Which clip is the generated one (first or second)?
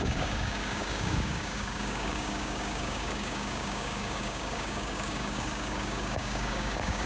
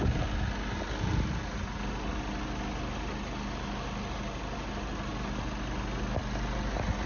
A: first